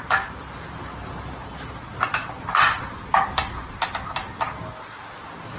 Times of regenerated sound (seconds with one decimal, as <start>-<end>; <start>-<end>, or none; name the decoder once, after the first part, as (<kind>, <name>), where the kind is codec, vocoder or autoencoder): none

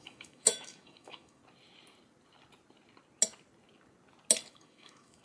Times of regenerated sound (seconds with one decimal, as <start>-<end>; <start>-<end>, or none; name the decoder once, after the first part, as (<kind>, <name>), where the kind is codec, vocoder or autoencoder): 0.0-1.4 (autoencoder, DAC-VAE); 4.5-5.2

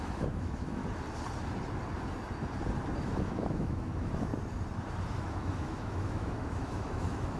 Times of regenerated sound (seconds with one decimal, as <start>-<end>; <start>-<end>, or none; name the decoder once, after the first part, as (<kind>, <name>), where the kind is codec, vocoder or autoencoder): 0.0-0.8 (autoencoder, DAC-VAE); 3.0-4.3; 5.2-7.4

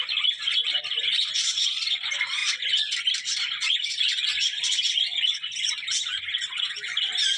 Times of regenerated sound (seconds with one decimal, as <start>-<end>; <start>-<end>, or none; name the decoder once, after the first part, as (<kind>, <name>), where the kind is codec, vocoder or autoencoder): none